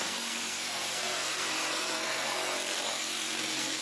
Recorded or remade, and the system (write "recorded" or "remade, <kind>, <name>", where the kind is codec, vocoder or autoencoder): remade, codec, SNAC